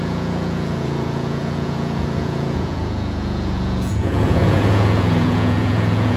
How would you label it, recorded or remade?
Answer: remade